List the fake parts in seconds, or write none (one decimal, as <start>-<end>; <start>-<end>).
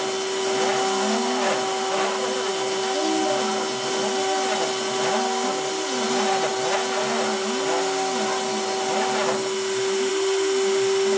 none